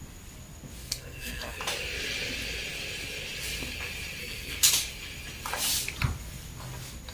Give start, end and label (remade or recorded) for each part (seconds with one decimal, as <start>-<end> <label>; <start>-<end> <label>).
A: 0.0-0.8 recorded; 0.8-1.6 remade; 1.6-4.2 recorded; 4.2-4.7 remade; 4.7-7.1 recorded